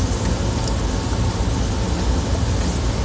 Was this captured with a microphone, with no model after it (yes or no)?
yes